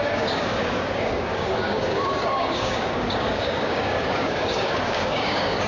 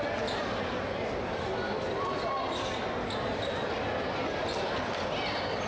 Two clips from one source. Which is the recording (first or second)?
second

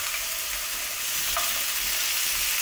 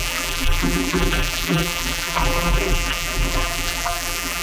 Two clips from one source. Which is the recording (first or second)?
first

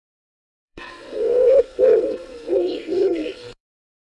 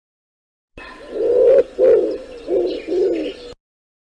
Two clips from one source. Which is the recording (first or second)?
second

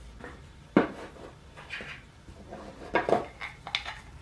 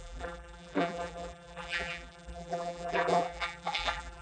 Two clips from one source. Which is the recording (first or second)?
first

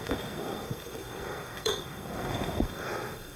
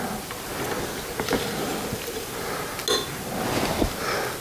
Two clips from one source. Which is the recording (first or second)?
second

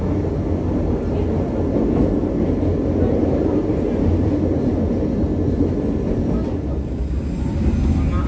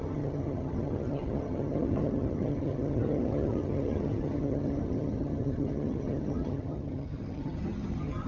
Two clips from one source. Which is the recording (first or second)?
first